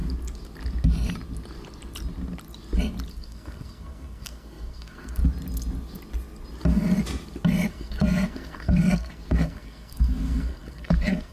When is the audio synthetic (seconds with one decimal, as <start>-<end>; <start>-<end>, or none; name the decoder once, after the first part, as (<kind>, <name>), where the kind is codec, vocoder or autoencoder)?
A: 3.1-5.2 (codec, SNAC); 7.7-11.3